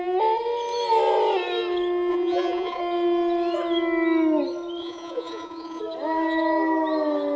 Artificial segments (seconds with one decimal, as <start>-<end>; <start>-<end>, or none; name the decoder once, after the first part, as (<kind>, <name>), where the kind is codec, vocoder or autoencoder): 2.1-2.8 (vocoder, Vocos); 4.8-5.8